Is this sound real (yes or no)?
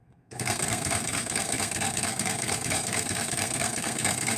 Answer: no